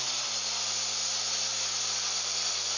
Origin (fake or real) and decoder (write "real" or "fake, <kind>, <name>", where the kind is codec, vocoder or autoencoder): real